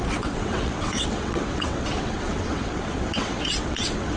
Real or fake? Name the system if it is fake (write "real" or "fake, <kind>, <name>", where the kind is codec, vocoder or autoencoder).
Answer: fake, vocoder, WaveNeXt